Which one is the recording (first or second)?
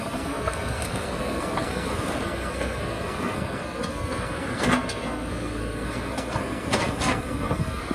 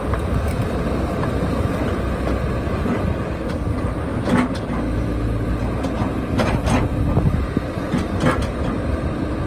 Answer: second